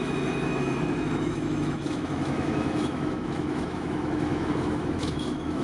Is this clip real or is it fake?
fake